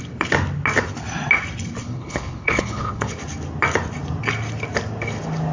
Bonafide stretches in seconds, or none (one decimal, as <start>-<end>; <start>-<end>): 0.0-1.8; 3.1-5.5